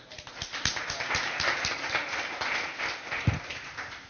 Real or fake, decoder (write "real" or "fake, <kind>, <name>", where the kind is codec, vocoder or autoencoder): real